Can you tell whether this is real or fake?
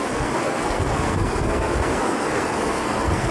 fake